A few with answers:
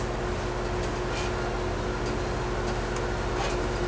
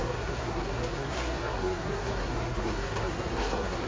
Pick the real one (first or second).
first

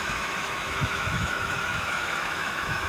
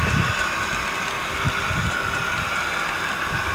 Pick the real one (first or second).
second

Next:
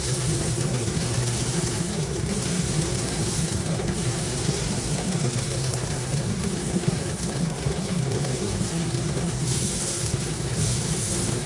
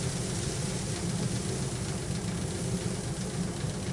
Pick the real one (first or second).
second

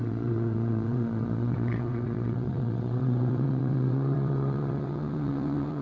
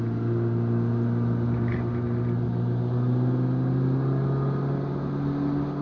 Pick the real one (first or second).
second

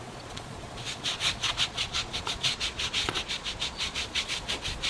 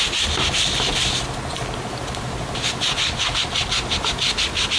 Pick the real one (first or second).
second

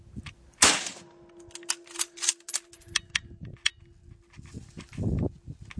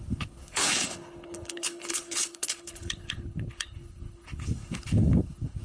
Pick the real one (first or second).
first